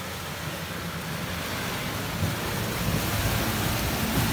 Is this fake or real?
real